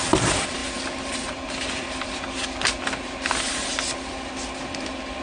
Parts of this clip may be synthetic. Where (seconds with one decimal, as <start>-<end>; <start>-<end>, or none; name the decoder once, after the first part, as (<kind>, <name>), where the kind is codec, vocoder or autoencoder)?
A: 0.6-2.1 (vocoder, BigVGAN v2)